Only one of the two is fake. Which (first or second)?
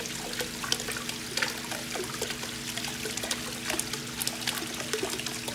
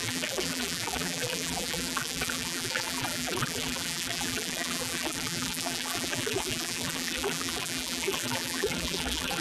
second